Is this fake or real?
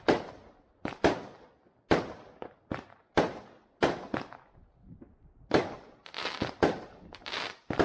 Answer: real